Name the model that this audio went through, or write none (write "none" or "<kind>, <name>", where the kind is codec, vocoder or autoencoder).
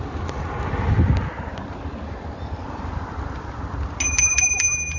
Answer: none